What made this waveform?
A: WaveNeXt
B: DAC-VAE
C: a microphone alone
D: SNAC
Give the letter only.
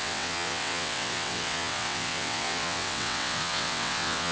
A